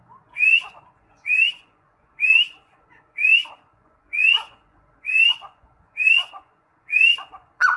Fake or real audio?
fake